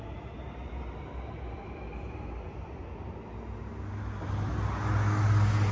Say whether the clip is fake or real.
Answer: real